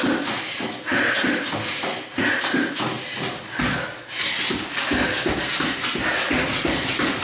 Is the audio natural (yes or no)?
yes